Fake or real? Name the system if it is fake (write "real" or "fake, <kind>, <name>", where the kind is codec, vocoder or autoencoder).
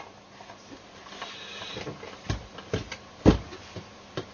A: real